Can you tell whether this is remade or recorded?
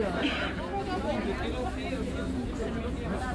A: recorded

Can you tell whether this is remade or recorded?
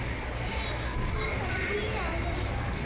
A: recorded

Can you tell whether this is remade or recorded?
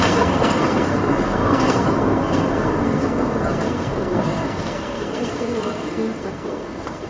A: remade